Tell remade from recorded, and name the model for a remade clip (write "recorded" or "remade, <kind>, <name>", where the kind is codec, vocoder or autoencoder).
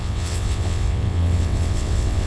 remade, vocoder, WaveNeXt